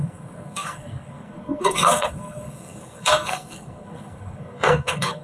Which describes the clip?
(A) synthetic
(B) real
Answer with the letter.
A